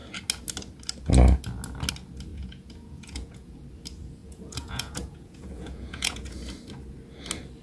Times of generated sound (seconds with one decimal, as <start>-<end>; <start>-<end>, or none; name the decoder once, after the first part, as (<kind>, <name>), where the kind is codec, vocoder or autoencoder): 2.3-3.5 (vocoder, Vocos); 4.2-6.4